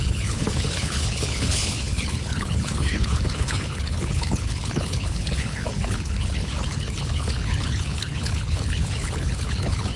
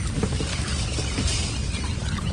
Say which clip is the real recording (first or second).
second